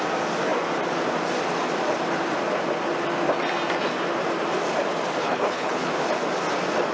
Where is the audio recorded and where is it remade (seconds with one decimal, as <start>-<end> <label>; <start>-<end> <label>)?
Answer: 0.0-5.2 recorded; 5.2-5.9 remade; 5.9-6.9 recorded